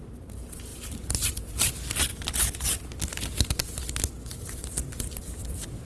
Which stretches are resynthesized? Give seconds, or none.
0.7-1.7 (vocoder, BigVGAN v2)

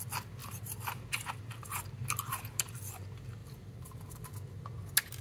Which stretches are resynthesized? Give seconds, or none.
0.4-2.9 (vocoder, BigVGAN v2); 3.4-4.3

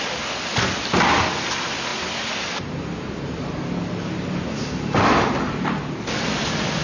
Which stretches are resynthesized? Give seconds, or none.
none

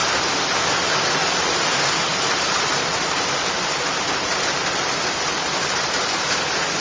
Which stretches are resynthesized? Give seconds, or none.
2.1-6.2 (vocoder, BigVGAN v2)

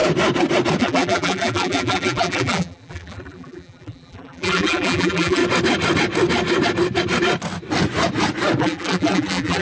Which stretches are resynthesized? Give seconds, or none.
0.8-5.4 (vocoder, BigVGAN v2); 8.6-9.6

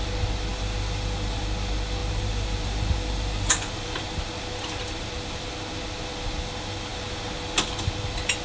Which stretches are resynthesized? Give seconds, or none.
0.5-1.4 (vocoder, BigVGAN v2); 2.0-3.9

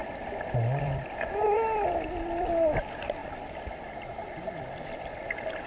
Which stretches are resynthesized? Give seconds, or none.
0.8-3.2 (vocoder, BigVGAN v2); 4.4-5.7